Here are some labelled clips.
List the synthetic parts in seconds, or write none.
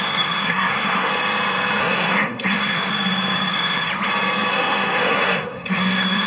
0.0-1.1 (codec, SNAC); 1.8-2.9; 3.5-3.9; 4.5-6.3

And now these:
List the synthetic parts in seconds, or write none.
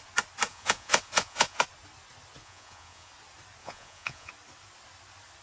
0.5-1.6 (vocoder, Vocos); 2.4-3.1; 3.6-4.3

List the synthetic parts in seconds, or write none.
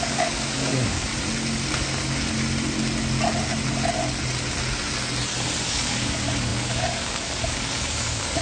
0.0-1.1 (codec, DAC); 5.7-8.4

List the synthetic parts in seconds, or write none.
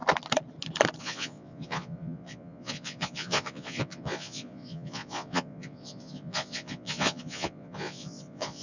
1.0-8.6 (vocoder, Vocos)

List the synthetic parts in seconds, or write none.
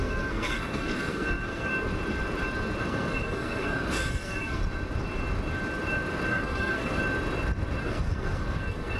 0.0-1.7 (codec, SNAC); 2.8-4.6; 6.3-7.0; 7.8-9.0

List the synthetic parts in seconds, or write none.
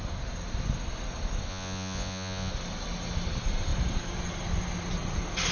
1.5-2.5 (vocoder, Vocos)